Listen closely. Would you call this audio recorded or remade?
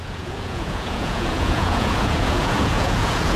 remade